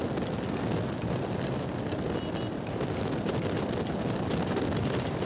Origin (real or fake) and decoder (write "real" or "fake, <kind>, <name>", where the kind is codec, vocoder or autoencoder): real